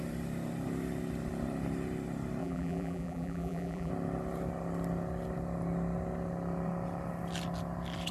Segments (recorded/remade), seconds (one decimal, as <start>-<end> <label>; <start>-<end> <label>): 0.0-2.4 recorded; 2.4-3.9 remade; 3.9-8.1 recorded